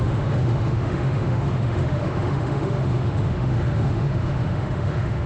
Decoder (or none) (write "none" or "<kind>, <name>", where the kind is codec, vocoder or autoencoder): autoencoder, DAC-VAE